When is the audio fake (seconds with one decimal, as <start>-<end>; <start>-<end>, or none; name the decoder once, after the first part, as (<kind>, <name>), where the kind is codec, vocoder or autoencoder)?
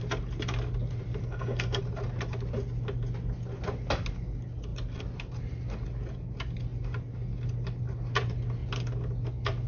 1.2-1.8 (codec, SNAC)